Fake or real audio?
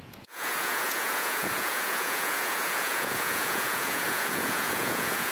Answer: fake